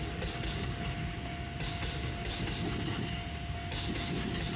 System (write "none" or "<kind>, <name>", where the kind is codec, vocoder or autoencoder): none